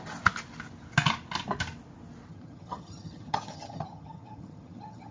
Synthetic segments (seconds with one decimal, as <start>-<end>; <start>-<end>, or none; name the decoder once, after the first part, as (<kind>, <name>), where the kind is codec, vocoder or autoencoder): 2.3-5.1 (vocoder, HiFi-GAN)

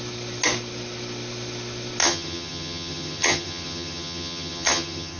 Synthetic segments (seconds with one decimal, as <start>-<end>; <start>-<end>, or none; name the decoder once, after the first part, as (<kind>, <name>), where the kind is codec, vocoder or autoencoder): 2.0-5.2 (vocoder, HiFi-GAN)

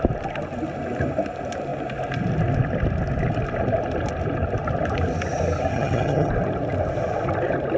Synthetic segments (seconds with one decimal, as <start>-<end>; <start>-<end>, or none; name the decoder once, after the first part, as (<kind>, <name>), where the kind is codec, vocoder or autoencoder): 5.7-6.3 (vocoder, HiFi-GAN)

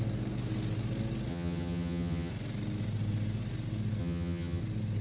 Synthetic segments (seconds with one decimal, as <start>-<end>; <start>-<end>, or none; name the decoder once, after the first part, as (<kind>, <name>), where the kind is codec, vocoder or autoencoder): 1.3-2.3 (vocoder, HiFi-GAN); 4.0-4.6